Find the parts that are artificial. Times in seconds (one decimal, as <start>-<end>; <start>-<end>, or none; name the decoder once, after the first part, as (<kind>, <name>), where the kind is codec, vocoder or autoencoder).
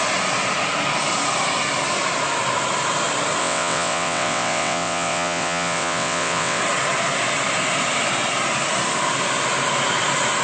3.4-6.6 (vocoder, WaveNeXt)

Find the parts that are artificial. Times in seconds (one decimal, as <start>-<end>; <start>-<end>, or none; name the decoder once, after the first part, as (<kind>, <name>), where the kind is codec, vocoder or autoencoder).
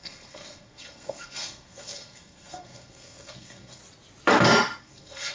0.0-3.8 (codec, SNAC); 4.8-5.3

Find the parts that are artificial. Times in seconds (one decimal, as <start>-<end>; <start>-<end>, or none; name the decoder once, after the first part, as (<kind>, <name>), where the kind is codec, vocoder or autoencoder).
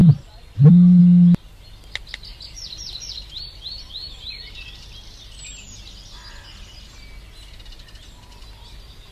0.0-1.0 (vocoder, BigVGAN v2); 2.3-4.2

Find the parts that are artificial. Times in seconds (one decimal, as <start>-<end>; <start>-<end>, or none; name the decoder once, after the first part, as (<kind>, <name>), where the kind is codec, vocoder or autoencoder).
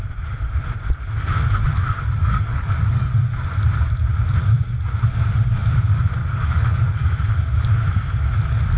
2.2-3.3 (codec, DAC); 6.2-7.1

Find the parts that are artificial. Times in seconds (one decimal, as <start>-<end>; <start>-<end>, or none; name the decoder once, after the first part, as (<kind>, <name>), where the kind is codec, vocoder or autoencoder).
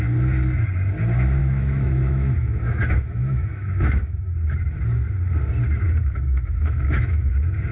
1.4-4.3 (autoencoder, DAC-VAE); 6.0-7.3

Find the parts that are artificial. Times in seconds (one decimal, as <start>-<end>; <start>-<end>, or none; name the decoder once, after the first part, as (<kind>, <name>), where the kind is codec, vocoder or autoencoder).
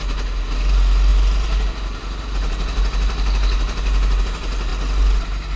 none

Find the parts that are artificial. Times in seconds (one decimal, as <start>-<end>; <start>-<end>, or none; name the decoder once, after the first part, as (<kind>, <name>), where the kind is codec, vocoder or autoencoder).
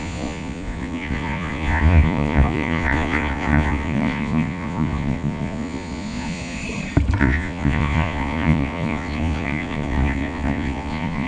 0.0-6.6 (vocoder, Vocos); 7.2-11.3